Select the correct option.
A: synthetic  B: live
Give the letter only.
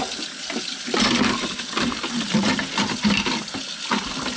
B